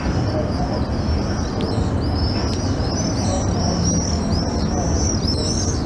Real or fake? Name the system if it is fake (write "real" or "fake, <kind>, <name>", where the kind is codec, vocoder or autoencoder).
fake, vocoder, BigVGAN v2